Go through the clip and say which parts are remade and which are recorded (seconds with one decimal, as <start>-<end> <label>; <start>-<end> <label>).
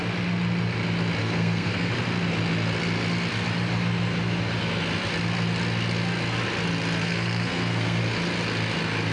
0.0-1.2 recorded; 1.2-1.9 remade; 1.9-7.0 recorded; 7.0-8.0 remade; 8.0-9.1 recorded